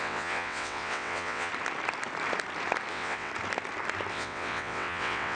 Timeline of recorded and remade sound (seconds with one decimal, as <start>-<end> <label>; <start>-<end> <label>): 0.0-1.5 remade; 1.5-2.9 recorded; 2.9-3.3 remade; 3.3-4.1 recorded; 4.1-5.4 remade

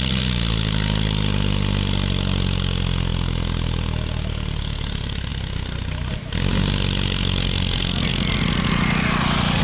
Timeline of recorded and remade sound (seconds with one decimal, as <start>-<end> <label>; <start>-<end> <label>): 0.0-9.6 recorded